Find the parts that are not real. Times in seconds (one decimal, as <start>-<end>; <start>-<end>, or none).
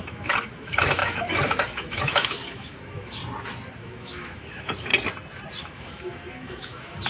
0.0-3.2; 3.8-4.9; 5.6-7.1